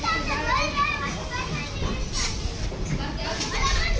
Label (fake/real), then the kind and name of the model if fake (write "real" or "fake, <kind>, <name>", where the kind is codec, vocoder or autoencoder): real